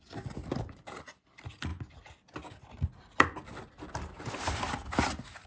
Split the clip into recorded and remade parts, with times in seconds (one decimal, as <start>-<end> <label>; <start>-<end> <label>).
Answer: 0.0-5.5 recorded